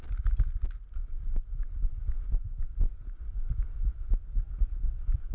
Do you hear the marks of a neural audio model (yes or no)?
no